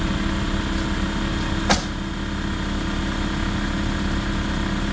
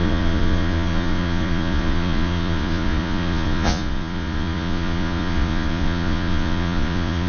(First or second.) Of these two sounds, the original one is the first